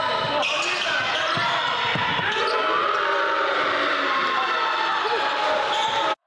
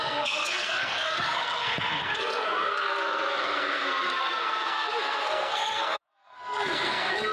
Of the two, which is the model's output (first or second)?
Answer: second